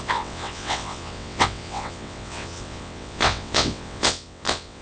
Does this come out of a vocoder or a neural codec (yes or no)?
yes